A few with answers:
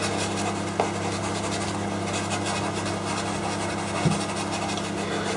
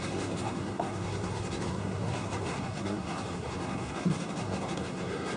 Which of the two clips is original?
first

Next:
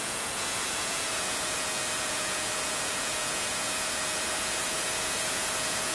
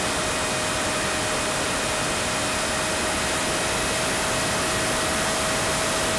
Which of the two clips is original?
second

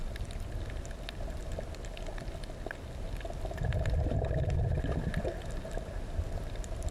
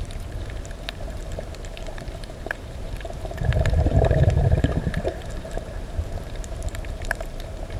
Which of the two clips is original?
first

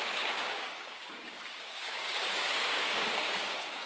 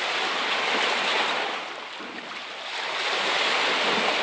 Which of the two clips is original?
second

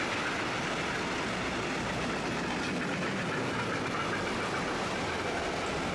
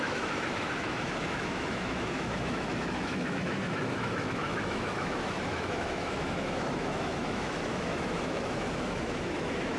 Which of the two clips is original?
first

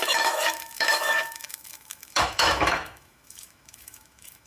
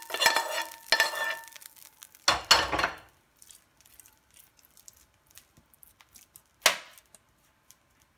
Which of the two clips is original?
second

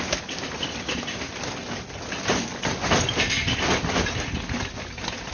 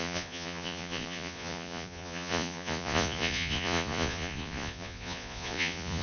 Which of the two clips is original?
first